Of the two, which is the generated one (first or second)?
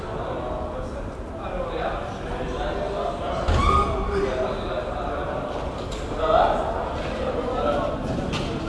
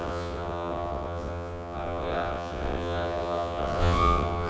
second